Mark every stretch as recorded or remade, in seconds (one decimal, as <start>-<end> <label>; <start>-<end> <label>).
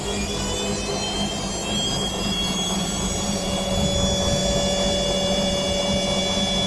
0.0-1.6 recorded; 1.6-3.7 remade; 3.7-6.7 recorded